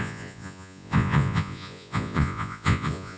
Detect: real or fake fake